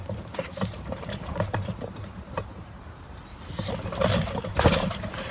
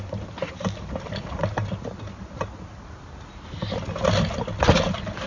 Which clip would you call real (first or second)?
second